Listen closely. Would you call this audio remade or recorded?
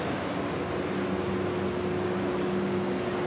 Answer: recorded